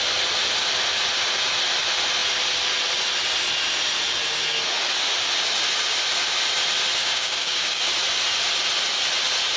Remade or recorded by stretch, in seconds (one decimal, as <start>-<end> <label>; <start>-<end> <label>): 0.0-7.0 recorded; 7.0-7.8 remade; 7.8-9.6 recorded